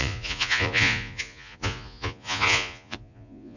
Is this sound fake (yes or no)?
yes